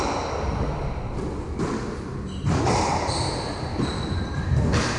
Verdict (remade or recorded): recorded